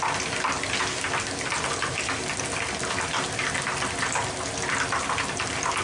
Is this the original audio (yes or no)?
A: yes